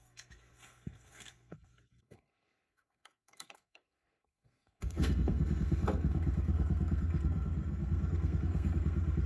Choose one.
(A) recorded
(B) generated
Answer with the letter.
B